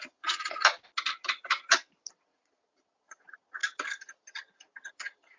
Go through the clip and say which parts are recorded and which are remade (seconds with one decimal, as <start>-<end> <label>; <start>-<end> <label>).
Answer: 0.0-0.6 remade; 0.6-2.1 recorded; 2.1-3.6 remade; 3.6-4.9 recorded; 4.9-5.4 remade

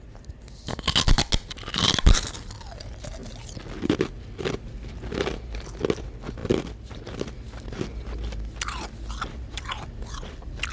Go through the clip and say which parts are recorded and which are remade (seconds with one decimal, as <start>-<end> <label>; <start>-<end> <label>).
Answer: 0.0-10.7 recorded